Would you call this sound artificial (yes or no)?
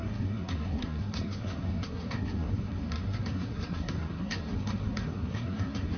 yes